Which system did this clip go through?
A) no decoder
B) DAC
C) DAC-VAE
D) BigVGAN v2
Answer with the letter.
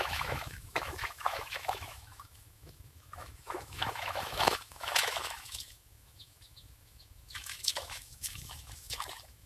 C